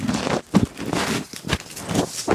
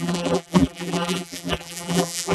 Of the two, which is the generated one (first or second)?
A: second